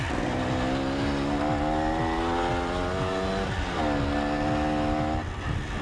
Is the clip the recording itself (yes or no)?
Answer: yes